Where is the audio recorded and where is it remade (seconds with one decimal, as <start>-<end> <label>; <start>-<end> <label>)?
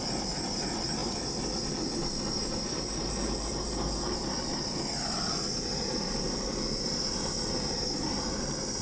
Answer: 0.0-8.8 recorded